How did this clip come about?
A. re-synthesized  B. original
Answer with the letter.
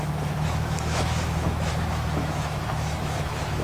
A